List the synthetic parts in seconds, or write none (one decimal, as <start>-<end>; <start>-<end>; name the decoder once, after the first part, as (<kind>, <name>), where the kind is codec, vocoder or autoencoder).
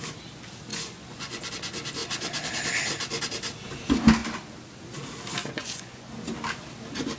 0.7-1.5 (vocoder, Vocos); 5.4-6.1